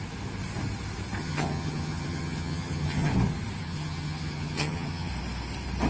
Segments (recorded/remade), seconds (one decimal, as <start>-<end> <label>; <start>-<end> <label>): 0.0-1.2 recorded; 1.2-3.1 remade; 3.1-3.6 recorded; 3.6-5.1 remade; 5.1-5.9 recorded